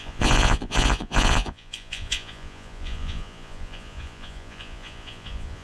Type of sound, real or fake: fake